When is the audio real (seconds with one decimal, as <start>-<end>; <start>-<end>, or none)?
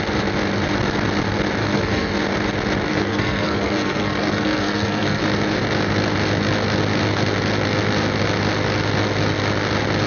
0.0-1.6; 2.1-2.9; 5.2-10.1